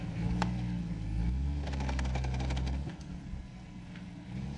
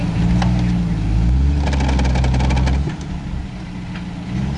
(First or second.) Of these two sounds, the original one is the second